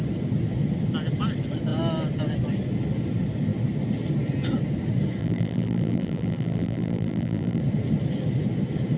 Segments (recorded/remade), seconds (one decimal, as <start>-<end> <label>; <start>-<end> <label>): 0.0-5.2 recorded; 5.2-7.6 remade; 7.6-9.0 recorded